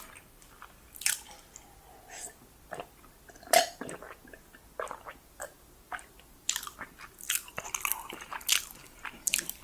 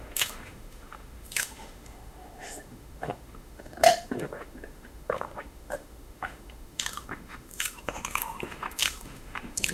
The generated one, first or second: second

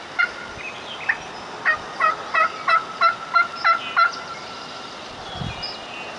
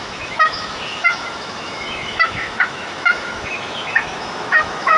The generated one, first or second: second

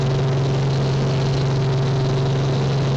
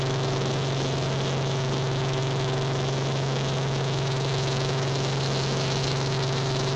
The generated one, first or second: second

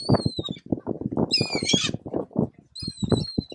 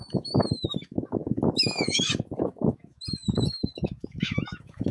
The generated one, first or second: second